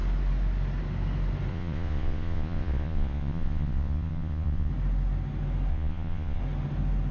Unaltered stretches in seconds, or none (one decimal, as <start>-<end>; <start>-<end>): 0.0-1.5; 4.7-5.7; 6.4-7.1